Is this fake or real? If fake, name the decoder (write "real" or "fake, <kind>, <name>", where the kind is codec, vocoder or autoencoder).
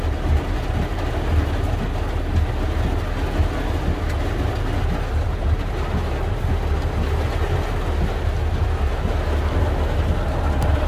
real